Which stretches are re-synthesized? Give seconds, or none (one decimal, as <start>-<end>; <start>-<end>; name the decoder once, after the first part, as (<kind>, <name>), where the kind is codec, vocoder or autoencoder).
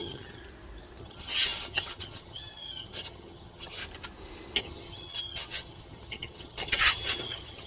0.0-0.4 (vocoder, HiFi-GAN); 1.0-3.8; 4.6-7.7